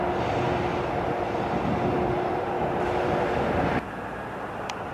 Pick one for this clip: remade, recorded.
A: recorded